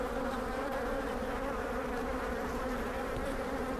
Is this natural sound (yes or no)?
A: yes